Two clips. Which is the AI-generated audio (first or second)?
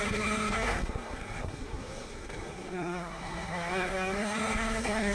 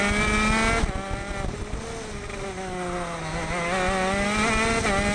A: first